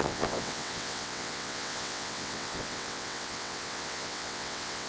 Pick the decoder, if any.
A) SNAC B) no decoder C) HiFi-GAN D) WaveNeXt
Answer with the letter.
D